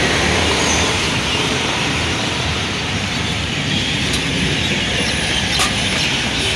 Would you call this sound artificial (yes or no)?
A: yes